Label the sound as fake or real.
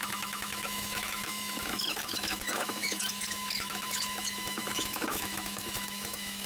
fake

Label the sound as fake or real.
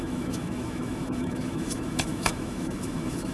fake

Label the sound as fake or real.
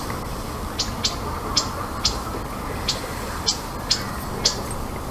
real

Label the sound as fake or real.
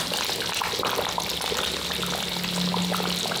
real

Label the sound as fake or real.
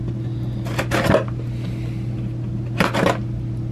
real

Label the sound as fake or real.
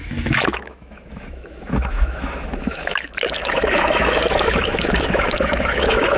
fake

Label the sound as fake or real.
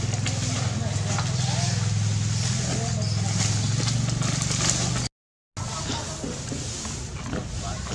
real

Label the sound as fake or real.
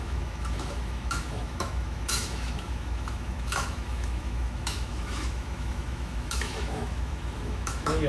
fake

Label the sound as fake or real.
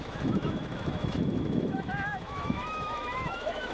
fake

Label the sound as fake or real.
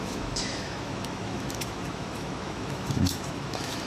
fake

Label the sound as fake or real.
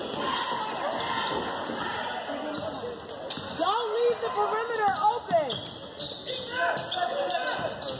real